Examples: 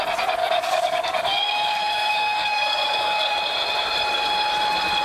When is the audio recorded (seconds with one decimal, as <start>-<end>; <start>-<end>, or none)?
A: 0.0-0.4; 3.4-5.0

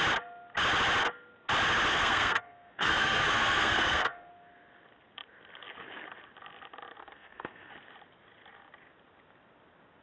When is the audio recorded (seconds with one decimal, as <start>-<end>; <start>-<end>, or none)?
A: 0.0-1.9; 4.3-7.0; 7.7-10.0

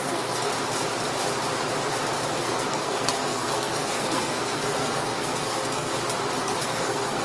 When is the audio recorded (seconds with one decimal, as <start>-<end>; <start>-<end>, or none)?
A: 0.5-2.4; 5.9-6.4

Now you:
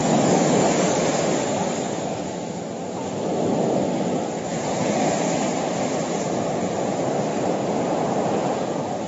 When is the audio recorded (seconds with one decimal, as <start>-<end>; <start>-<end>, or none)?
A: 2.3-9.1

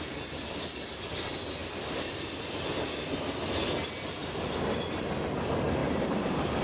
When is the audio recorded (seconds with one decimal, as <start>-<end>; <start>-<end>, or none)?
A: 0.0-5.8